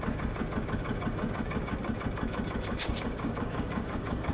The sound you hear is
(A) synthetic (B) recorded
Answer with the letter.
A